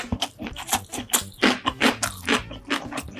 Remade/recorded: recorded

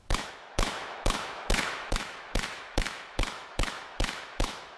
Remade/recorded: remade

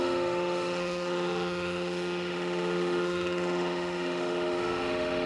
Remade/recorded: remade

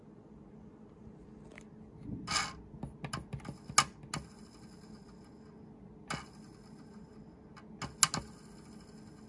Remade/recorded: recorded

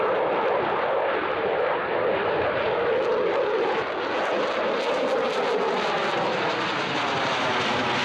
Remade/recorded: recorded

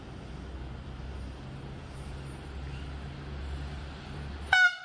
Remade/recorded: recorded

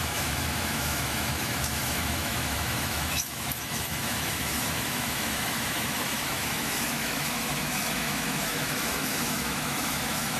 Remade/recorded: remade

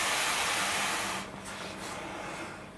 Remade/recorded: recorded